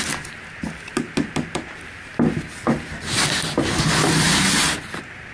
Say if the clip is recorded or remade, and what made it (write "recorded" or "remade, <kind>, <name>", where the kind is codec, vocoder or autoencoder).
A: recorded